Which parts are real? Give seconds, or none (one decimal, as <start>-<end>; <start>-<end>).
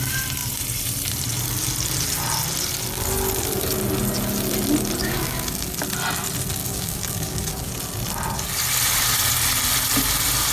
0.0-5.0; 5.8-6.6; 7.7-10.5